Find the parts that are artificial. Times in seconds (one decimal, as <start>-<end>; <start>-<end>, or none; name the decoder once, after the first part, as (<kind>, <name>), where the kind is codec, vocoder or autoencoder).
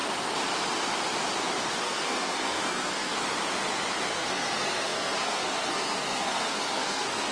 1.8-3.2 (codec, SNAC); 4.1-7.3